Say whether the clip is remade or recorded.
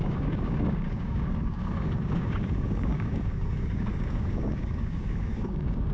remade